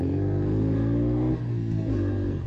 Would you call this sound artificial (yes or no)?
yes